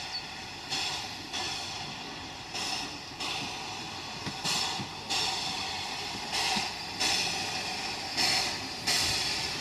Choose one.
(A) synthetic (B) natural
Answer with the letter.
B